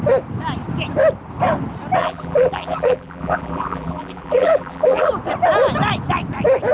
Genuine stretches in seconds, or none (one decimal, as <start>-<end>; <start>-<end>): 0.0-2.0; 5.1-6.7